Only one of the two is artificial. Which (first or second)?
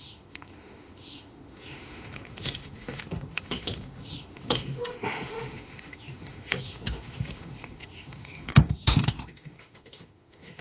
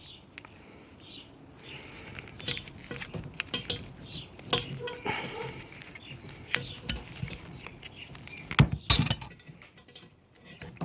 first